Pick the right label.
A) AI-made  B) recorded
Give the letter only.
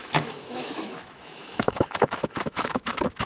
A